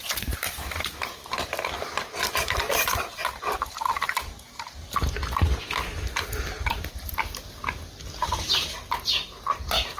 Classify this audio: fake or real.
real